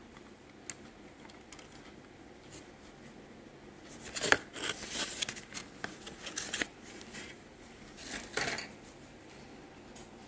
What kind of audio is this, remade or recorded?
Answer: recorded